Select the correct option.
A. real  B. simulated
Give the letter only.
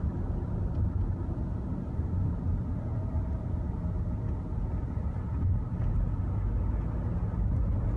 A